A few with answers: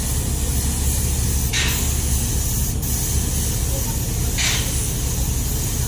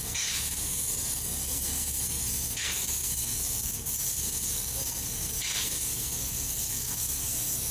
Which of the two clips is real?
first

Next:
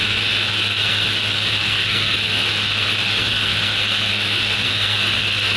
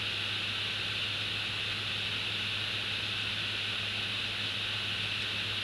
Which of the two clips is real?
second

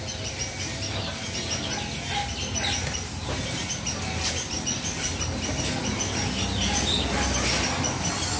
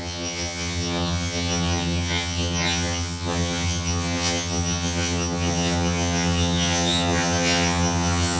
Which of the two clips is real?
first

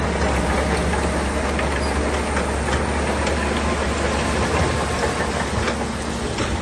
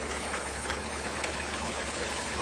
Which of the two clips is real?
first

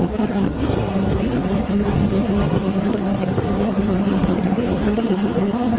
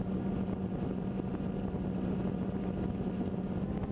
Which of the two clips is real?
second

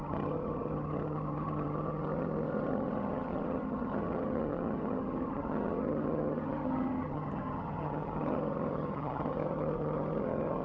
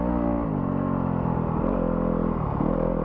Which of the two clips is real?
second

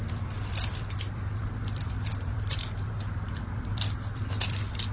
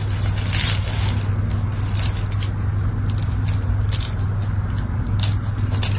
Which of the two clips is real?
second